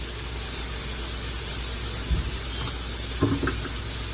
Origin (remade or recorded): recorded